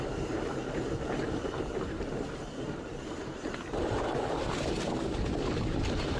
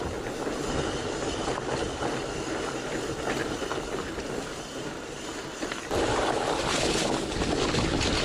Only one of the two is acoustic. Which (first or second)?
second